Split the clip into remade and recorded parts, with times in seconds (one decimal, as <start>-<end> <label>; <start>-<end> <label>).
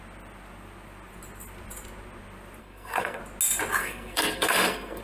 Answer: 0.0-2.6 recorded; 2.6-3.2 remade; 3.2-3.8 recorded; 3.8-5.0 remade